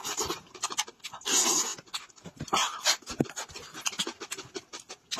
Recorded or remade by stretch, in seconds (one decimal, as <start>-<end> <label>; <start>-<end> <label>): 0.0-5.2 recorded